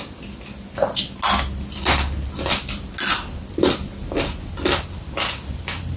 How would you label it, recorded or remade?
recorded